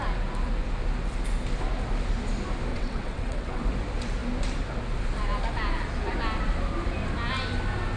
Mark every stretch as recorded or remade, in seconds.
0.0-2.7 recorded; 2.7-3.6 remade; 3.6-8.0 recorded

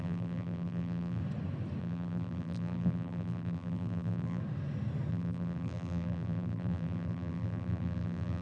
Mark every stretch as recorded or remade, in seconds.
0.0-1.2 remade; 1.2-1.8 recorded; 1.8-4.4 remade; 4.4-5.1 recorded; 5.1-8.4 remade

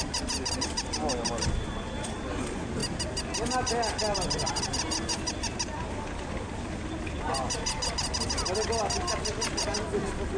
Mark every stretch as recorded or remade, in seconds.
0.0-10.4 recorded

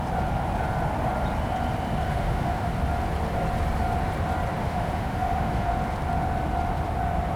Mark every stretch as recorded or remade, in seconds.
0.0-2.1 recorded; 2.1-2.7 remade; 2.7-4.6 recorded; 4.6-5.7 remade; 5.7-7.4 recorded